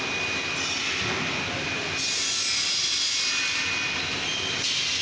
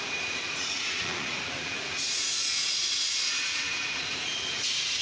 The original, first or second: first